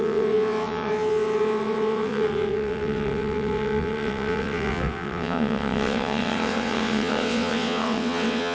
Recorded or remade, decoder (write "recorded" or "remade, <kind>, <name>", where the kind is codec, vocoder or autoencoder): remade, vocoder, WaveNeXt